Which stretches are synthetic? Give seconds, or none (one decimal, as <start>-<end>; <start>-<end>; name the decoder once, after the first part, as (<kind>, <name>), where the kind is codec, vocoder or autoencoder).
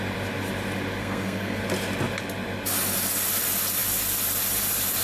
1.0-1.6 (codec, SNAC)